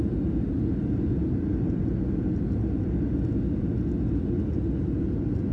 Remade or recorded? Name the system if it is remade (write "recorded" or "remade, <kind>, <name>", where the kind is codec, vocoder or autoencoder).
recorded